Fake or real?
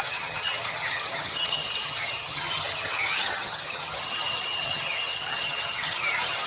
fake